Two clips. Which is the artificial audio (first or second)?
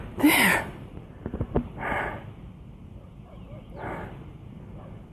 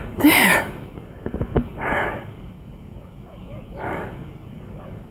second